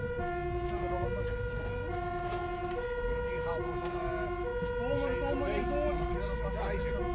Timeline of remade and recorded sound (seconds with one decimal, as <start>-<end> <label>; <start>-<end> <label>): 0.0-7.1 recorded